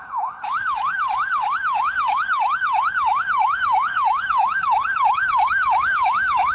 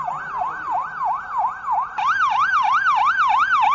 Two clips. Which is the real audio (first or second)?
second